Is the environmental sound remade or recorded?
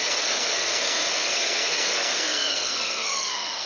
remade